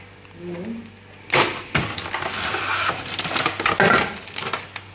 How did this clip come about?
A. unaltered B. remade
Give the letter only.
A